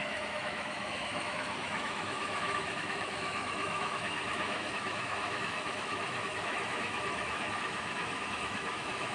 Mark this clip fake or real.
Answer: fake